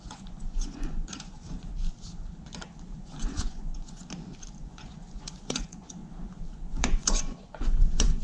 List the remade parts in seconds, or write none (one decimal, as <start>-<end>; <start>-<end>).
0.0-1.7; 3.0-4.0; 4.6-6.0; 6.7-8.2